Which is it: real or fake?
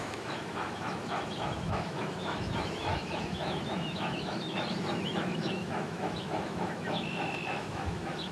fake